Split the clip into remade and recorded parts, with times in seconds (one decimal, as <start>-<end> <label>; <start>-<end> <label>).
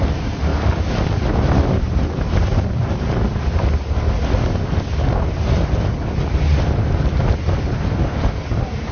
0.0-8.9 recorded